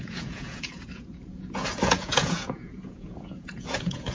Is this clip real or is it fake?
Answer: fake